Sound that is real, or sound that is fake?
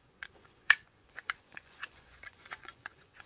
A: fake